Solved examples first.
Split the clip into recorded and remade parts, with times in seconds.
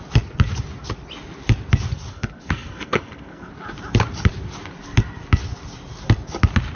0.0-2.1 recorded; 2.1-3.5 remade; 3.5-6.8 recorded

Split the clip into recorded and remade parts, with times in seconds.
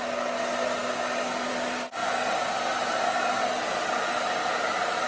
0.0-5.1 recorded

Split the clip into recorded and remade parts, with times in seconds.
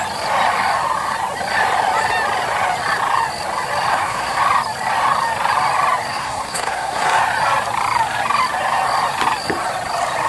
0.0-3.9 recorded; 3.9-4.4 remade; 4.4-6.1 recorded; 6.1-7.2 remade; 7.2-10.3 recorded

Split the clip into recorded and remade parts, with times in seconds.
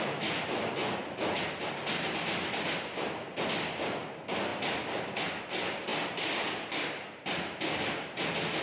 0.0-8.6 recorded